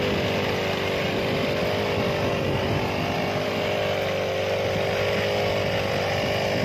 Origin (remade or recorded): recorded